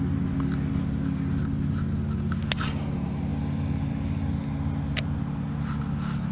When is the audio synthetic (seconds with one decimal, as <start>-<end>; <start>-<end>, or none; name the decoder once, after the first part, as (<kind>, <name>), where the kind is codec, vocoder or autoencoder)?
none